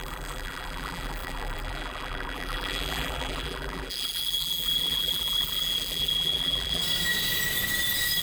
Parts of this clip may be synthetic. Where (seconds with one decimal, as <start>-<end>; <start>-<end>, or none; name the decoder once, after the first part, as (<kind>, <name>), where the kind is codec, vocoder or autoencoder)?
0.0-6.8 (vocoder, BigVGAN v2)